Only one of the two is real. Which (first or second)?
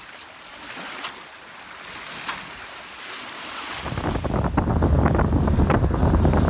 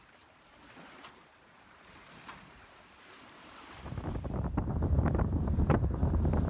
first